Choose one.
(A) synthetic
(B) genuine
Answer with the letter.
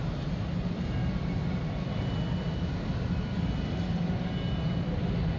B